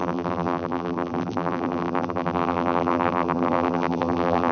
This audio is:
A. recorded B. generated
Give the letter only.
B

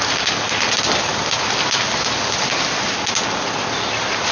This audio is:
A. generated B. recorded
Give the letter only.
B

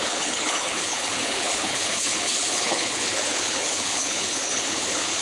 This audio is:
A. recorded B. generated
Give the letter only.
B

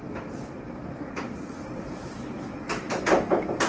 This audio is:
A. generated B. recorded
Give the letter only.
A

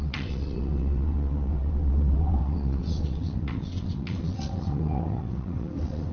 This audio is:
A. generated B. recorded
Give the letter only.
A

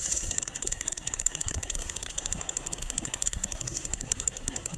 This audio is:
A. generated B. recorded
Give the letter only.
A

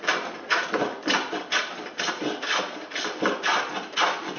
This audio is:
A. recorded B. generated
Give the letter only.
A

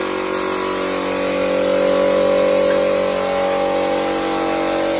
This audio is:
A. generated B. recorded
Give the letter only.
B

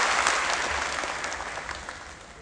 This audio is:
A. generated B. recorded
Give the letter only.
B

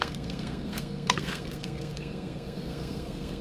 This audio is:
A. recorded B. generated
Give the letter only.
B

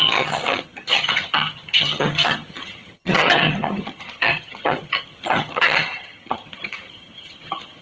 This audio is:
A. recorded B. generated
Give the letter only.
B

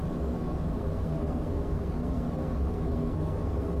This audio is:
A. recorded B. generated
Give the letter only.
B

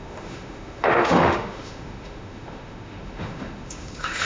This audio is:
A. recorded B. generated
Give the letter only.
B